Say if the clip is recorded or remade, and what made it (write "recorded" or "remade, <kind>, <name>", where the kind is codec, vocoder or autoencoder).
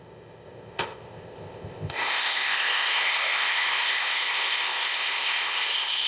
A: remade, codec, ZipCodec